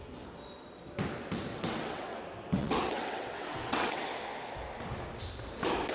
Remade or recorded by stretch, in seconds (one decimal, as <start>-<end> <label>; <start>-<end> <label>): 0.0-1.5 recorded; 1.5-2.2 remade; 2.2-2.6 recorded; 2.6-4.0 remade; 4.0-5.9 recorded